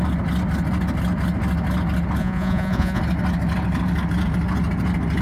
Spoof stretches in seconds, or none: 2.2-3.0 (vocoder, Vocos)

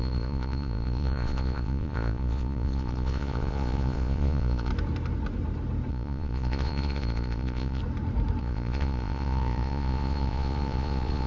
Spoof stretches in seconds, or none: 0.0-4.7 (vocoder, Vocos); 5.9-7.8; 8.4-11.3

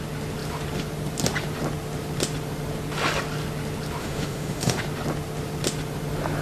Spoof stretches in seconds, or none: 4.0-4.8 (autoencoder, DAC-VAE)

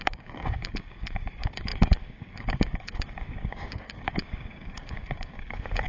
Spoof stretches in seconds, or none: 0.0-5.9 (codec, DAC)